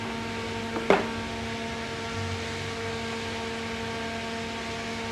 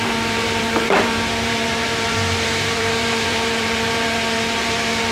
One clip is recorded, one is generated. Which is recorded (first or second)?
first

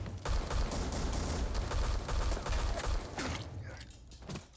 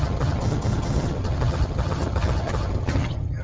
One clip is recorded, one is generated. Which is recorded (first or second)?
first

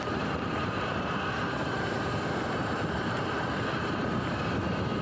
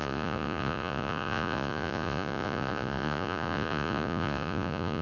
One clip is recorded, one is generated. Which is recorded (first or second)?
first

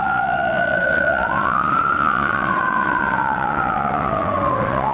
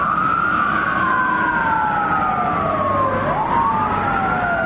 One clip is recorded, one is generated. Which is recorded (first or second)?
second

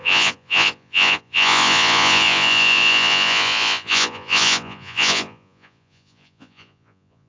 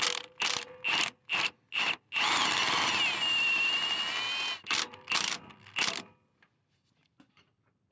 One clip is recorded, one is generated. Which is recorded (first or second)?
second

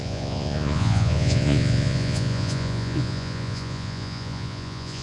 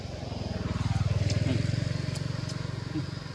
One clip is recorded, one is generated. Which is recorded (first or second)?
second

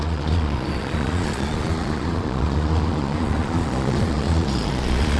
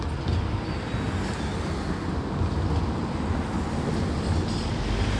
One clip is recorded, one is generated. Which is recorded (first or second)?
second